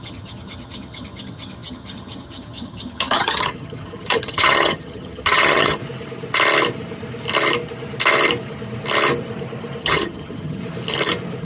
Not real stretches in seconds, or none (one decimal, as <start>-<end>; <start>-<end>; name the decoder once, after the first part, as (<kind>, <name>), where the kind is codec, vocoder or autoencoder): 0.0-5.8 (vocoder, HiFi-GAN); 9.8-10.6